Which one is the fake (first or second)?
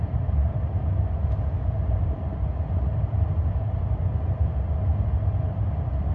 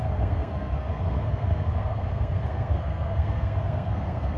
second